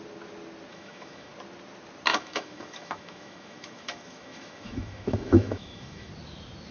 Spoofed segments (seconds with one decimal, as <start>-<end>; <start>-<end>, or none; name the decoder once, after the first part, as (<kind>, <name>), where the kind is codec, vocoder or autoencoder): 0.7-1.3 (autoencoder, DAC-VAE); 2.1-6.1